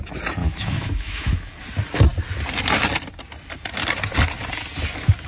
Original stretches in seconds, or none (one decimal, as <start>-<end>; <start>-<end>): 0.0-0.4; 1.5-5.3